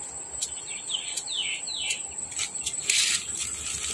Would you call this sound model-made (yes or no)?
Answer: no